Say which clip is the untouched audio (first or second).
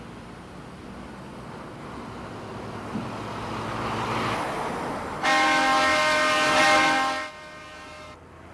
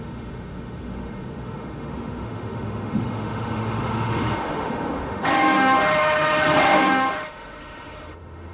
first